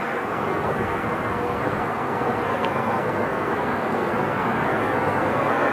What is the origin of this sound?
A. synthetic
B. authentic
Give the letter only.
A